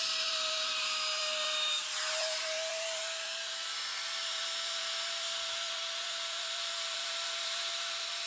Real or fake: fake